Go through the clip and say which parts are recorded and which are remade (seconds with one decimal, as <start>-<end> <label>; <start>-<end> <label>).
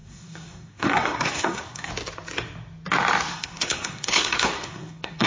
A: 0.0-1.9 remade; 1.9-3.3 recorded; 3.3-5.3 remade